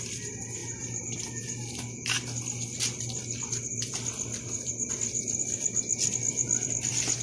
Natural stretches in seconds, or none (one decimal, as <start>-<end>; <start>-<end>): 0.0-7.2